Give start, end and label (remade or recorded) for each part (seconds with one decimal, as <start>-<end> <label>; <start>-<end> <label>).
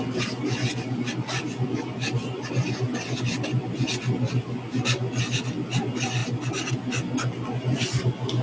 0.0-8.4 recorded